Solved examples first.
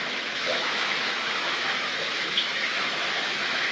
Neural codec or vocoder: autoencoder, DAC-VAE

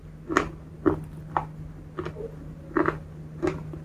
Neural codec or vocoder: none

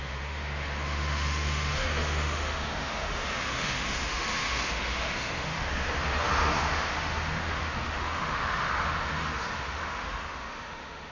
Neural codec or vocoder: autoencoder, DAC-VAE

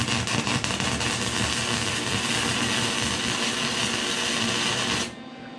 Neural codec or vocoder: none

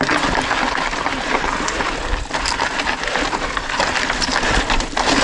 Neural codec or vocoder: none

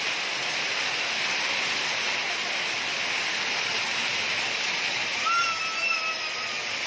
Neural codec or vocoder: none